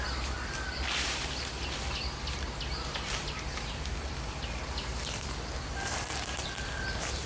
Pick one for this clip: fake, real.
real